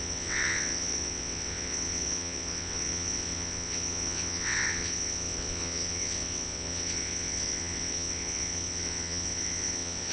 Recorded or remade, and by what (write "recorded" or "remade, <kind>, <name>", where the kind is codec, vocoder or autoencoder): remade, vocoder, WaveNeXt